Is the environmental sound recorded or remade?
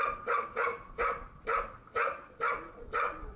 recorded